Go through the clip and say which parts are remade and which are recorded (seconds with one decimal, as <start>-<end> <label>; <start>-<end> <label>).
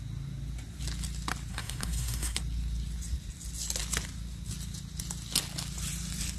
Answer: 0.0-1.5 recorded; 1.5-2.4 remade; 2.4-6.4 recorded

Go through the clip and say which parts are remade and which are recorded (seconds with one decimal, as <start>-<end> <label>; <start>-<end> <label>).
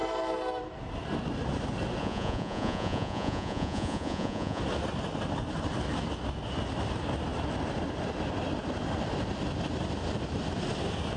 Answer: 0.0-2.0 recorded; 2.0-4.6 remade; 4.6-11.2 recorded